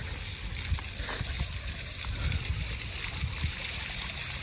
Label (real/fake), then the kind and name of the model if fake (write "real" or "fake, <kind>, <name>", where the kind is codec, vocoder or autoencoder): real